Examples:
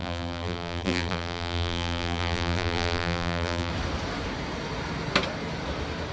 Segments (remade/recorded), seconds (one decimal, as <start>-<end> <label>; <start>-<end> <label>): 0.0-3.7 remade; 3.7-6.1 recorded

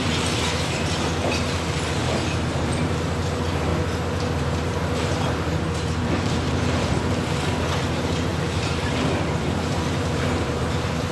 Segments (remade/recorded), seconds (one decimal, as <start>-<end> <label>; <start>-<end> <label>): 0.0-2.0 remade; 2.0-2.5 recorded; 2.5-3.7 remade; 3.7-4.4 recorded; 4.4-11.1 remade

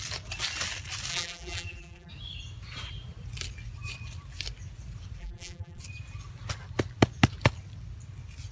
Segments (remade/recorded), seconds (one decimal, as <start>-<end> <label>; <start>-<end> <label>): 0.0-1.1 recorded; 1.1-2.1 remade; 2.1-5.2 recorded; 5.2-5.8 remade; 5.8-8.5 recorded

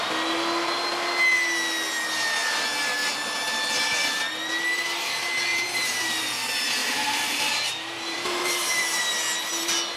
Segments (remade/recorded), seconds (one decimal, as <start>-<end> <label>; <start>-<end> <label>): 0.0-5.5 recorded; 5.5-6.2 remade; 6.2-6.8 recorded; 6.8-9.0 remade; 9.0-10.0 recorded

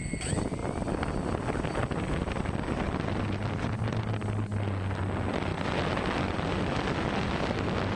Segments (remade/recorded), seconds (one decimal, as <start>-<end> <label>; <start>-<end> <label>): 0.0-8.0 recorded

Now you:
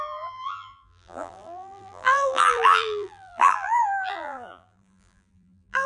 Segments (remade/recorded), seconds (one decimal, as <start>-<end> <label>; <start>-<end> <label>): 0.0-5.9 remade